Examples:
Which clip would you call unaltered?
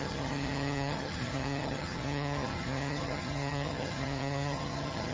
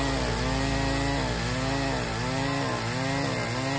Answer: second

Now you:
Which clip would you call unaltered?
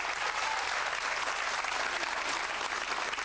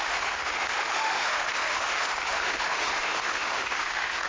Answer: first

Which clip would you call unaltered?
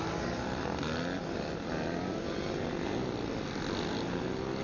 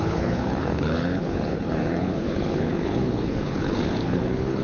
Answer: first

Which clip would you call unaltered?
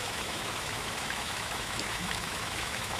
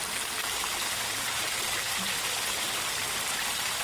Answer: second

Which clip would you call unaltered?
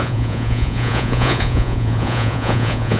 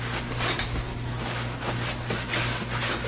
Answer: second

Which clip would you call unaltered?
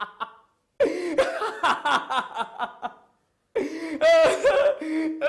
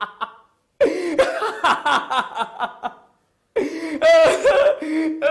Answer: first